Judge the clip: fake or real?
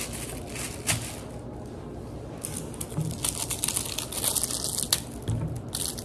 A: real